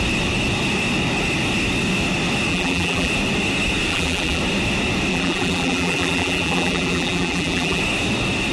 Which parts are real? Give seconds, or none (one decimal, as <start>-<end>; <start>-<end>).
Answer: 0.0-2.5; 3.1-3.9; 4.4-5.1; 7.8-8.5